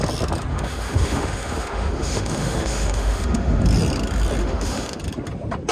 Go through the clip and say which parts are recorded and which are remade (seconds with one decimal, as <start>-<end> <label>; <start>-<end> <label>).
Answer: 0.0-0.5 recorded; 0.5-3.6 remade; 3.6-4.4 recorded; 4.4-5.0 remade; 5.0-5.7 recorded